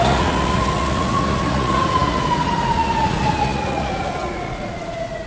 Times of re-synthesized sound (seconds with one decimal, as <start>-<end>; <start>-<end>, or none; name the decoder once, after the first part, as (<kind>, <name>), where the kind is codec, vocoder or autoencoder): 0.0-5.3 (vocoder, Vocos)